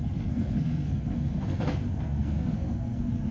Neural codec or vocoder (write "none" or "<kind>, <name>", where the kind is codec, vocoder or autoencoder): codec, SNAC